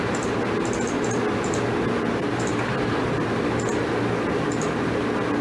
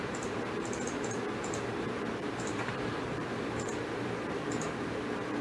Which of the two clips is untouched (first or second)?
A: first